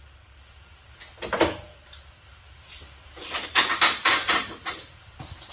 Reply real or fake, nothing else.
real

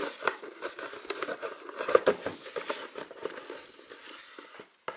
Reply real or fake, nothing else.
real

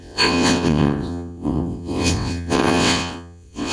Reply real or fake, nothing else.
fake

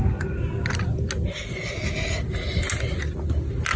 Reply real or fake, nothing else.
real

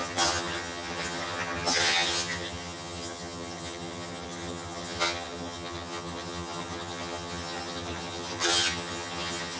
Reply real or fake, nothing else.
fake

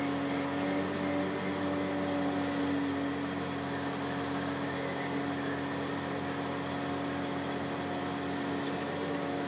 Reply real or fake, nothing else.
real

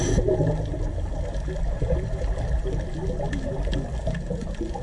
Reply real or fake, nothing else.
real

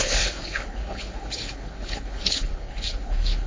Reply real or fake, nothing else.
fake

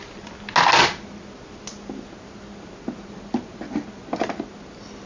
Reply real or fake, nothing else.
real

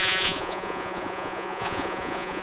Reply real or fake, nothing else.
fake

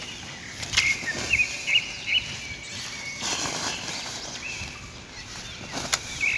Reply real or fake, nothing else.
real